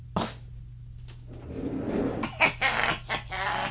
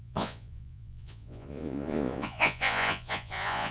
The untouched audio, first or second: first